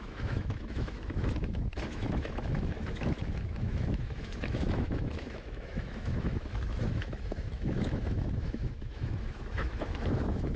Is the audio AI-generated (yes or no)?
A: yes